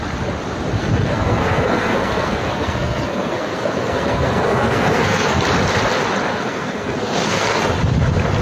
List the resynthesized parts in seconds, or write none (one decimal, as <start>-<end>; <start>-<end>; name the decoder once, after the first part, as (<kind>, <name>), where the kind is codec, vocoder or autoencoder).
0.8-5.4 (codec, SNAC); 6.3-7.6